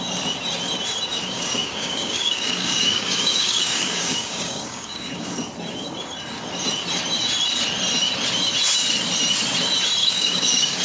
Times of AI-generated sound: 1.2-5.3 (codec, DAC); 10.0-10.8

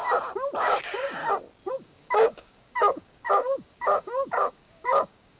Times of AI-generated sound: 0.6-1.2 (codec, DAC); 1.7-5.4